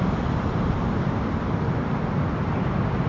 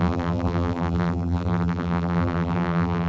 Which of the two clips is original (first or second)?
first